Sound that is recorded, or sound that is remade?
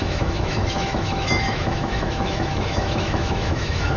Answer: remade